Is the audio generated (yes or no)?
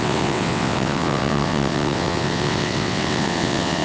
yes